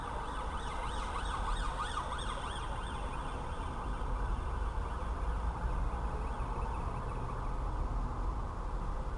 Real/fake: real